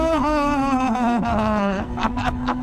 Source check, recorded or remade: remade